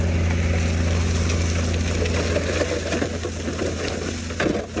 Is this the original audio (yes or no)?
yes